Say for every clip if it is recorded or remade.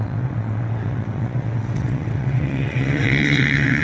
remade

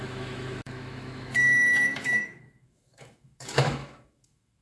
remade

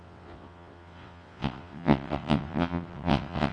remade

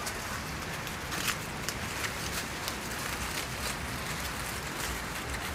recorded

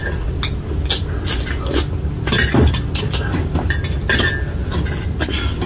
recorded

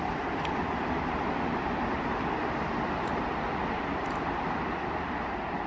recorded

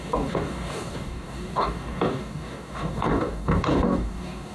remade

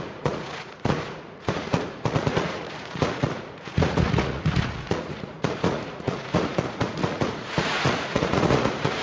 remade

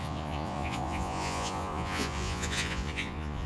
remade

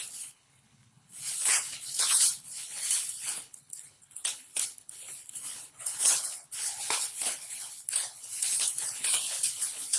remade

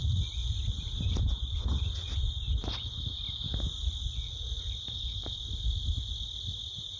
recorded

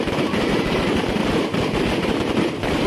remade